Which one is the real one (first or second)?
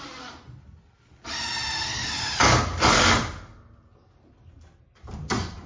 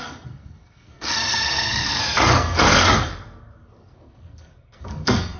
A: first